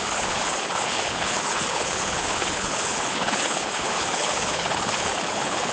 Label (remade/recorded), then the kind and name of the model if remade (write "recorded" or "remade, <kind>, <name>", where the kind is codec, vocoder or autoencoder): remade, codec, HILCodec